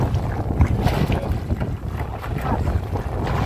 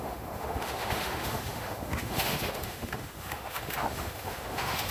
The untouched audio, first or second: first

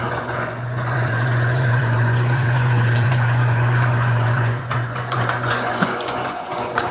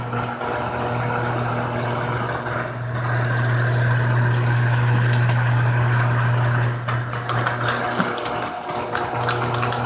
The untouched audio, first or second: second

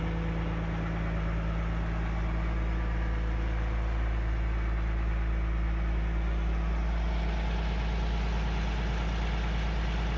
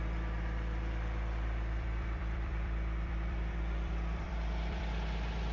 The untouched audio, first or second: first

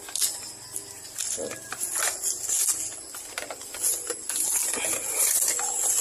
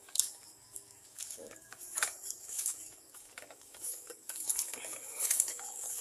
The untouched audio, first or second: first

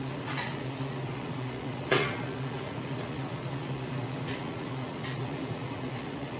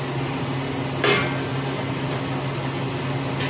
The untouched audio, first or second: second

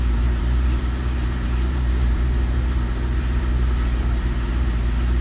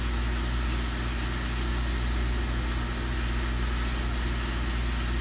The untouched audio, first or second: second